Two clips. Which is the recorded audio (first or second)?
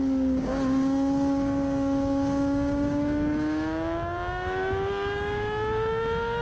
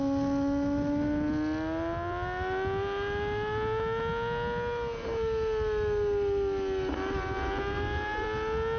second